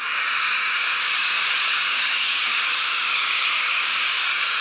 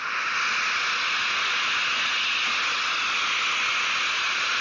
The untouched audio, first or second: second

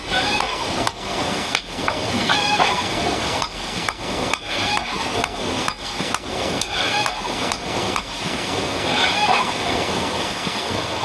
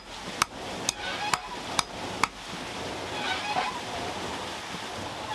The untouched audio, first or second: second